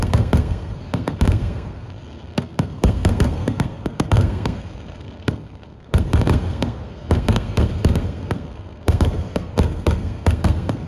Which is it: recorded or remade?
remade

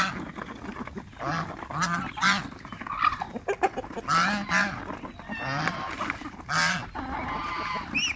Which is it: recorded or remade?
recorded